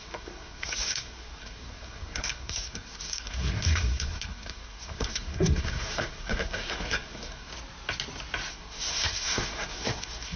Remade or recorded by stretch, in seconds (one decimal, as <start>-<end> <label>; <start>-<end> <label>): 0.0-7.5 remade; 7.5-8.5 recorded; 8.5-10.4 remade